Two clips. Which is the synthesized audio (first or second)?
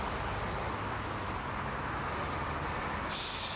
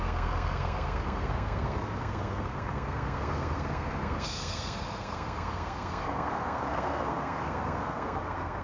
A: second